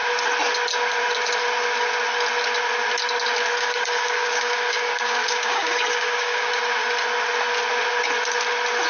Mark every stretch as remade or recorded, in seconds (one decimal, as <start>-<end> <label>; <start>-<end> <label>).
0.0-3.5 recorded; 3.5-6.5 remade; 6.5-8.9 recorded